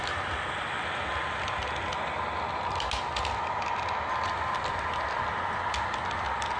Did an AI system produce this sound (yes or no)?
no